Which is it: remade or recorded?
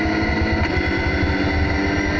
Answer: recorded